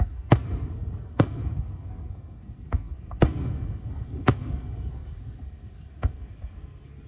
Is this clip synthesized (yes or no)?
yes